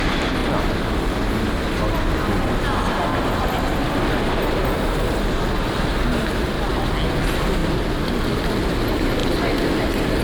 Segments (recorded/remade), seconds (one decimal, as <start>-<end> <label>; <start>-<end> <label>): 0.0-10.2 recorded